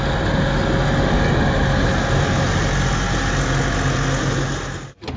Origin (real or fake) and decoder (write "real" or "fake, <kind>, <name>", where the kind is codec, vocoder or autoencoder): real